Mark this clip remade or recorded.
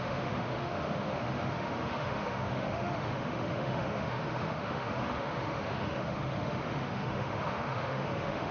remade